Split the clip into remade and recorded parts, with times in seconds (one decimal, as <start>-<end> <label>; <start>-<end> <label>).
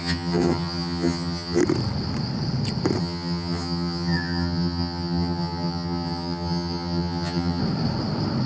0.0-1.6 remade; 1.6-3.0 recorded; 3.0-7.6 remade; 7.6-8.5 recorded